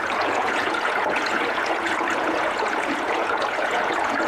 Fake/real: fake